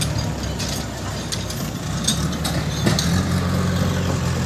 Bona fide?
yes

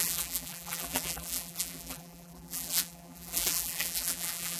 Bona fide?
no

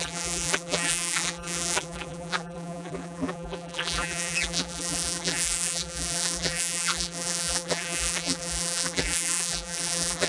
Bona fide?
no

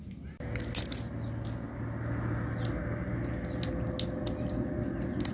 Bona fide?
yes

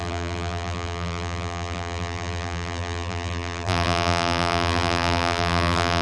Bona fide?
no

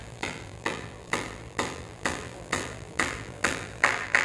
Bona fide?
no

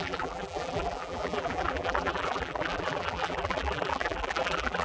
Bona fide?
no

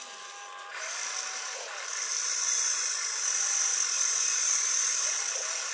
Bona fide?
yes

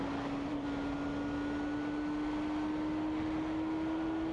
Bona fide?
yes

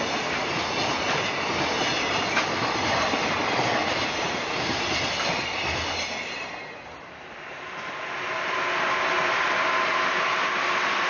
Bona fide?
yes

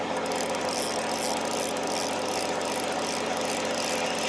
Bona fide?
yes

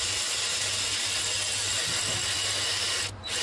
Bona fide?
yes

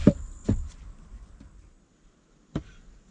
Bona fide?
yes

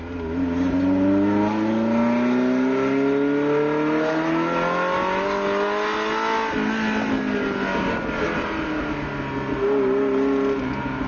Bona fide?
yes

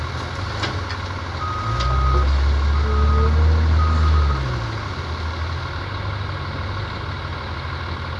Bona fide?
yes